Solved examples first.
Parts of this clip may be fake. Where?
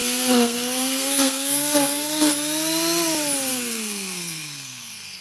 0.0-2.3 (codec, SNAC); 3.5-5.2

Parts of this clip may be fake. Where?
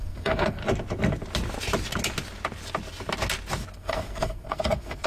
0.0-0.6 (codec, SNAC); 3.7-5.1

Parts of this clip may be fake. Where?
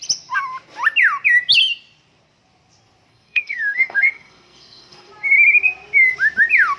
3.1-5.1 (codec, SNAC)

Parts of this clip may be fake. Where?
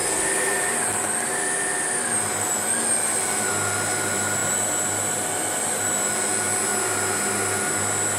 none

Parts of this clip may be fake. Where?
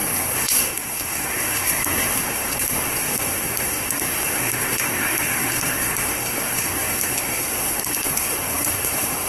0.0-9.3 (codec, SNAC)